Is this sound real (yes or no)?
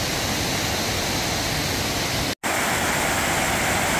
yes